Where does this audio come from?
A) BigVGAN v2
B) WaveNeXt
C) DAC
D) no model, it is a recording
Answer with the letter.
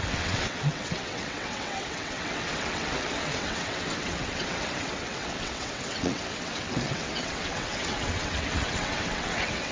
B